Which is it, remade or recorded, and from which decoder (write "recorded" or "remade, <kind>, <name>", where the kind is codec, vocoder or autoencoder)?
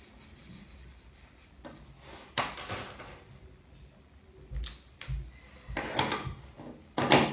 recorded